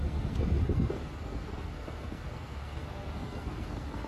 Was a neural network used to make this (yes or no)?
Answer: yes